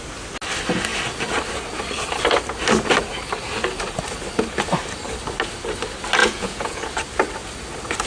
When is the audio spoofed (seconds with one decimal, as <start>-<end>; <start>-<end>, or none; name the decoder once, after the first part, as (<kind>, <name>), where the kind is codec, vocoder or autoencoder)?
6.2-6.8 (vocoder, Vocos)